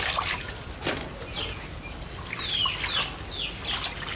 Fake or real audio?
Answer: real